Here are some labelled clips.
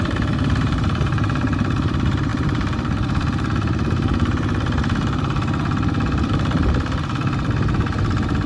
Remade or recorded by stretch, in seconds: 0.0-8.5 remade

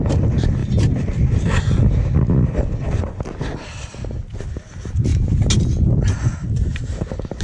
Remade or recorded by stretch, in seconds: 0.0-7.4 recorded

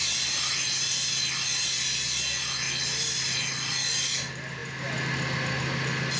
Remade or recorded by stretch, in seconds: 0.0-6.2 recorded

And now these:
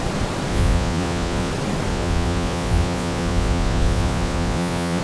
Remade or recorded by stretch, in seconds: 0.0-0.5 recorded; 0.5-1.5 remade; 1.5-1.9 recorded; 1.9-5.0 remade

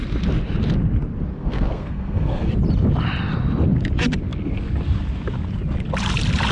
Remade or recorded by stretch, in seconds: 0.0-1.3 recorded; 1.3-2.5 remade; 2.5-6.5 recorded

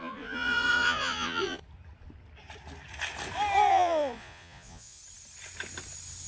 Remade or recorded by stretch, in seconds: 0.0-1.6 remade; 1.6-3.7 recorded; 3.7-5.0 remade; 5.0-6.3 recorded

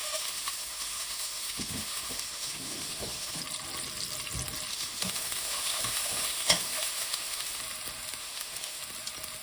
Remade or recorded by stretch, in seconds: 0.0-3.4 remade; 3.4-4.7 recorded; 4.7-7.6 remade; 7.6-8.2 recorded; 8.2-8.8 remade; 8.8-9.4 recorded